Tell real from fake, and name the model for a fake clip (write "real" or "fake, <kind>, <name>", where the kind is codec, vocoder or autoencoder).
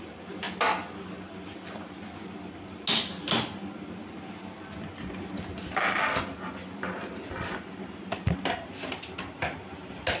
real